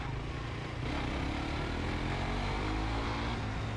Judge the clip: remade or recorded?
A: recorded